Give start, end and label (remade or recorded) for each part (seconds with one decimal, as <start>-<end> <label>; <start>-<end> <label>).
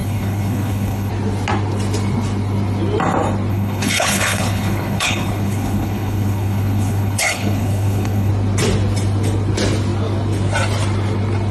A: 0.0-1.1 remade; 1.1-3.5 recorded; 3.5-8.3 remade; 8.3-11.5 recorded